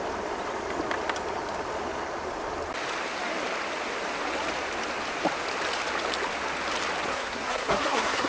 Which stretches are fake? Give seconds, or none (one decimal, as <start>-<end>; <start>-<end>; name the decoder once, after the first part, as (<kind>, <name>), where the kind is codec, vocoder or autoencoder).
7.1-8.3 (codec, SNAC)